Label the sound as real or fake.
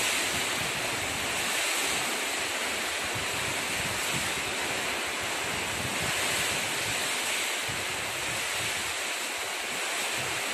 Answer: real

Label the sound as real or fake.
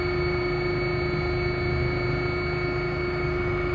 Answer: real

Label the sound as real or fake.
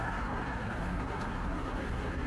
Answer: fake